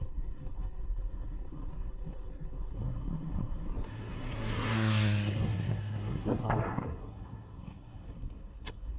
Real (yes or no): no